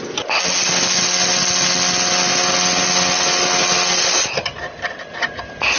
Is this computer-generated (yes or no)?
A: no